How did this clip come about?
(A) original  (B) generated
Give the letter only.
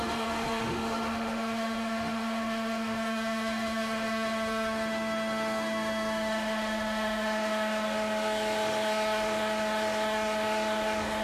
B